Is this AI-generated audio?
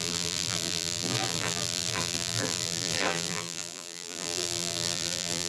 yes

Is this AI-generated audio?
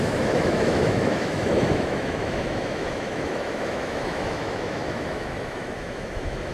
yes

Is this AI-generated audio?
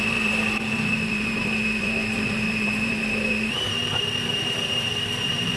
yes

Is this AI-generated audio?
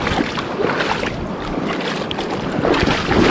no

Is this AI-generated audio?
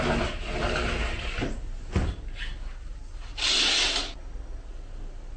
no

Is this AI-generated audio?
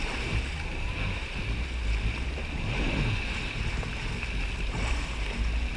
no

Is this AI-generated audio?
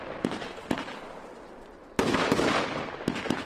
no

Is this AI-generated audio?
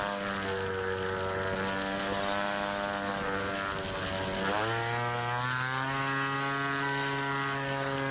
no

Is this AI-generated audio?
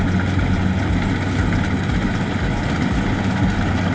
no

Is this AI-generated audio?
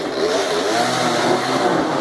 no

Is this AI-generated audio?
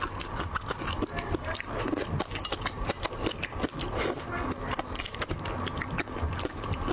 no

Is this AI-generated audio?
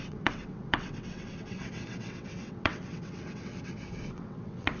yes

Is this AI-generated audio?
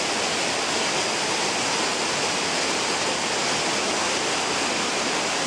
no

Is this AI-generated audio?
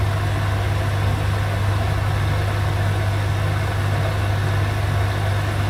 no